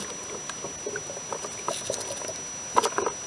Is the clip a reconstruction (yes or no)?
no